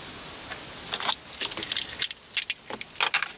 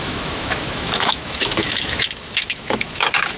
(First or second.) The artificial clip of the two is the second